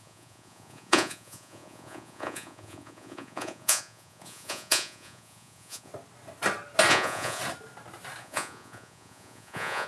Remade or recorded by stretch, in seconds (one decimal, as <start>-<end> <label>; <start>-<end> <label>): 0.0-5.9 remade; 5.9-6.9 recorded; 6.9-7.4 remade; 7.4-8.2 recorded; 8.2-9.9 remade